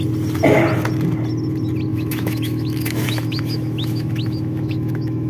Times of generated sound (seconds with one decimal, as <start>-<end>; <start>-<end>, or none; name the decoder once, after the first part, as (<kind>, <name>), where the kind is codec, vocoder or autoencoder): 1.9-5.3 (autoencoder, DAC-VAE)